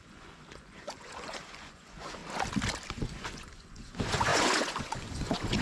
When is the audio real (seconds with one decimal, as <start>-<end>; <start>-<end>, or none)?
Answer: 2.2-2.9